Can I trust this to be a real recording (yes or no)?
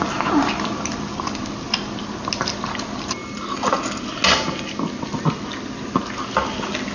yes